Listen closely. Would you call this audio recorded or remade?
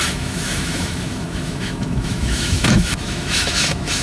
remade